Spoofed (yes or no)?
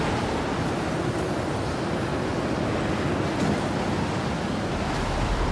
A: no